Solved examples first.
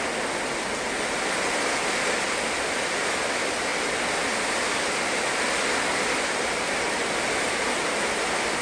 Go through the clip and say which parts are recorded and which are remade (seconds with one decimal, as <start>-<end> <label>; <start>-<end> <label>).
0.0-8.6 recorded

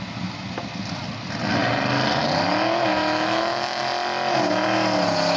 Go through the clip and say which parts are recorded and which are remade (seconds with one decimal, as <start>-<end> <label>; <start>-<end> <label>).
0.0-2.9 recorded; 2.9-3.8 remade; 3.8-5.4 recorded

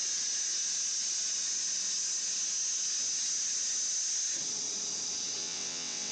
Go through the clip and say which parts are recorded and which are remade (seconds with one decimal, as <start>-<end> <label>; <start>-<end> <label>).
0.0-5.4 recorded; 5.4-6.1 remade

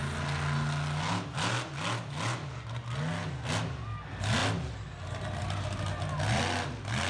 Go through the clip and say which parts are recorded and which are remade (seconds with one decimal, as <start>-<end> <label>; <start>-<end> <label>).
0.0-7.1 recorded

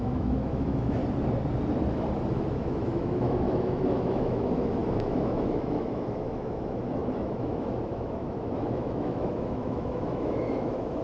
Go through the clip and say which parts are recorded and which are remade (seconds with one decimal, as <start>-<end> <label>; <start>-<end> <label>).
0.0-1.0 remade; 1.0-2.5 recorded; 2.5-11.0 remade

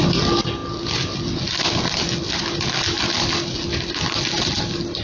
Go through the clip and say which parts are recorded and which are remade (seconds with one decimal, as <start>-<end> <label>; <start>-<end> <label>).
0.0-5.0 recorded

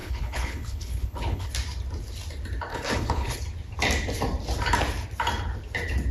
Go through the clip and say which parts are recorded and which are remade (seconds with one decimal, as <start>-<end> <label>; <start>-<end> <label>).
0.0-1.5 remade; 1.5-2.7 recorded; 2.7-3.4 remade; 3.4-6.1 recorded